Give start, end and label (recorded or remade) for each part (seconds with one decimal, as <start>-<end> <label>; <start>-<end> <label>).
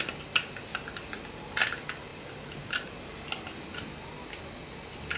0.0-5.2 recorded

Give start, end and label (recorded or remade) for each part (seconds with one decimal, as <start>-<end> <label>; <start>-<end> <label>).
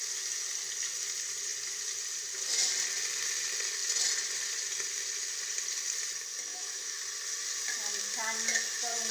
0.0-6.5 recorded; 6.5-7.0 remade; 7.0-9.1 recorded